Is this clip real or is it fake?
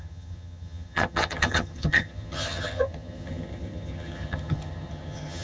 fake